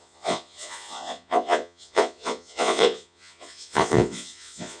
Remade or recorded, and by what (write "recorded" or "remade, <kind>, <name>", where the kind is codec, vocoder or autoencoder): remade, vocoder, Vocos